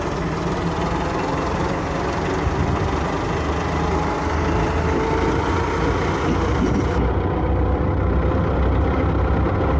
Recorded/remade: recorded